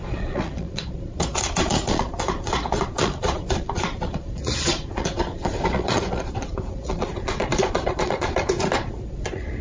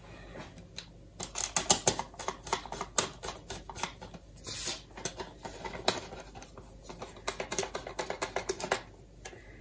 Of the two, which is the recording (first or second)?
second